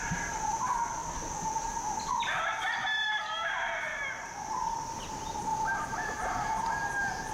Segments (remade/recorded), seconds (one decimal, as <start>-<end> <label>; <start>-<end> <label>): 0.0-7.3 recorded